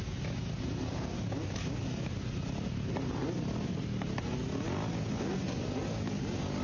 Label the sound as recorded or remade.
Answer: recorded